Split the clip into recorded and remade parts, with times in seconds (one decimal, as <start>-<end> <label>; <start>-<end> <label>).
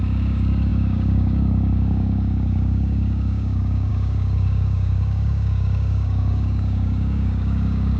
0.0-8.0 remade